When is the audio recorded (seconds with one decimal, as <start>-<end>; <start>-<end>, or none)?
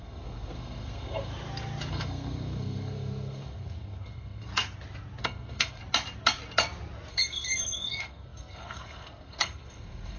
1.3-1.9; 4.5-5.2; 5.8-7.1